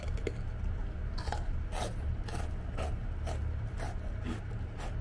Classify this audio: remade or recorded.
recorded